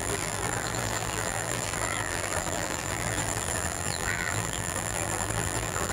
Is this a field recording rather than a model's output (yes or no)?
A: no